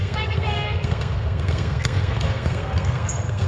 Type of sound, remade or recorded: remade